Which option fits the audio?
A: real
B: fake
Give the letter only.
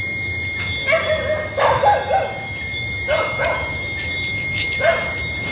A